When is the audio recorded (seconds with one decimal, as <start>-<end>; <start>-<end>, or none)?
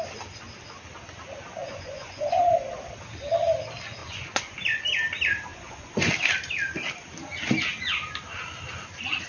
0.0-1.6; 2.6-4.0; 4.8-5.5; 6.1-9.3